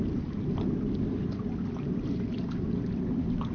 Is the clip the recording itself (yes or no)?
yes